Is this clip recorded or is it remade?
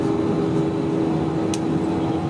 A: recorded